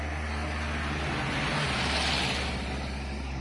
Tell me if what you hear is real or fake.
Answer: real